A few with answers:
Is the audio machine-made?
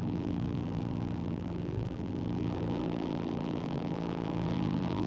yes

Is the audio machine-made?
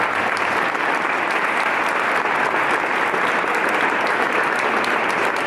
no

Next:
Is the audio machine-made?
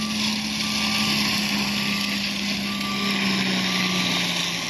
no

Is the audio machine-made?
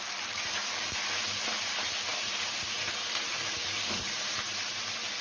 yes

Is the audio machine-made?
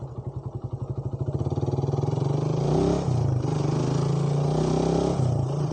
no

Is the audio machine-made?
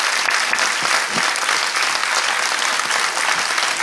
no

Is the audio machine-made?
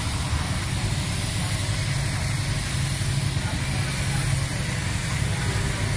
no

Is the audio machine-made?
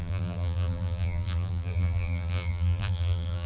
yes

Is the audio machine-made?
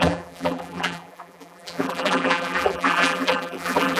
yes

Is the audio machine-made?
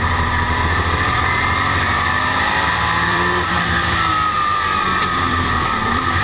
yes